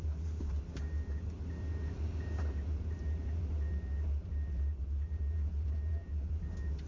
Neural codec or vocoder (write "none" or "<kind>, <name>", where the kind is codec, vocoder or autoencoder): none